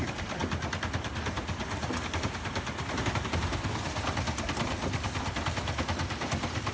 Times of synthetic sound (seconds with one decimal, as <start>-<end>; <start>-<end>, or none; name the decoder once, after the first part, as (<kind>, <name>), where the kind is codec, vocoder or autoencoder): none